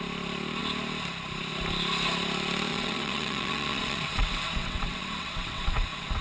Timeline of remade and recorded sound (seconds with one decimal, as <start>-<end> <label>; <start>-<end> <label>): 0.0-2.7 recorded; 2.7-6.2 remade